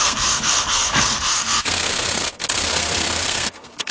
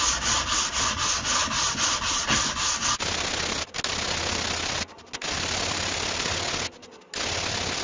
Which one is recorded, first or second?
second